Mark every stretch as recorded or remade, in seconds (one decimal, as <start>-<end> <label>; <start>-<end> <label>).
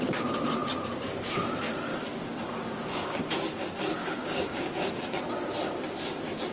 0.0-1.9 recorded; 1.9-3.2 remade; 3.2-4.0 recorded; 4.0-5.3 remade; 5.3-6.5 recorded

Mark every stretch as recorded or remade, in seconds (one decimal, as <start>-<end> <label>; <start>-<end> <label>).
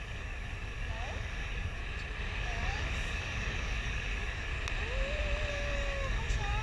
0.0-1.8 remade; 1.8-2.4 recorded; 2.4-4.5 remade; 4.5-5.5 recorded; 5.5-6.6 remade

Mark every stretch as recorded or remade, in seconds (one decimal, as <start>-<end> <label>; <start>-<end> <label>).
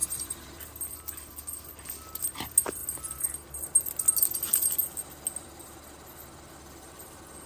0.0-7.5 recorded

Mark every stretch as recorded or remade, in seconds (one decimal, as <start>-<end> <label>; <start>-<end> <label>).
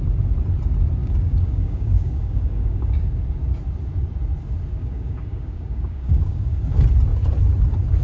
0.0-1.0 recorded; 1.0-3.1 remade; 3.1-4.7 recorded; 4.7-6.6 remade; 6.6-8.0 recorded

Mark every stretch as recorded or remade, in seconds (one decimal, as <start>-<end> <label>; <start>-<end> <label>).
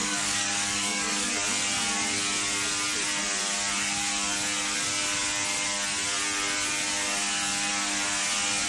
0.0-1.3 remade; 1.3-8.7 recorded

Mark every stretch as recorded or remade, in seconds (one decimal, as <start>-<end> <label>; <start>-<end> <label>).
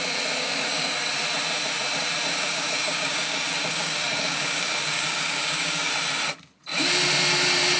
0.0-0.4 recorded; 0.4-1.1 remade; 1.1-2.3 recorded; 2.3-5.9 remade; 5.9-7.8 recorded